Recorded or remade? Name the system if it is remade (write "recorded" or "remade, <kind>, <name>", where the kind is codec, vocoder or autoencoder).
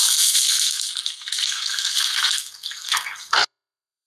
remade, codec, SNAC